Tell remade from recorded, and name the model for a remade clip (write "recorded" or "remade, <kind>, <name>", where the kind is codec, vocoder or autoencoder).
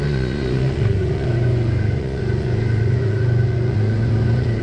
remade, vocoder, Vocos